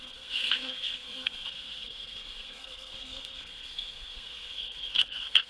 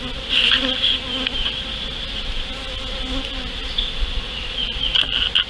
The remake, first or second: first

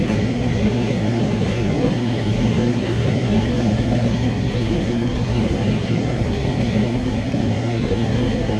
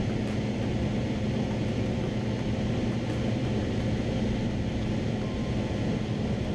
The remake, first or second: first